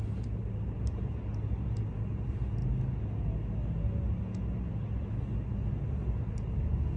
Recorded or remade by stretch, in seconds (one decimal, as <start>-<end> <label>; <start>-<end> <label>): 0.0-7.0 recorded